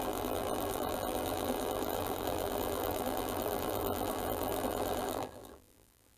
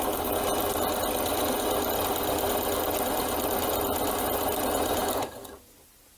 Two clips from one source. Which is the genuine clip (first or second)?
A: second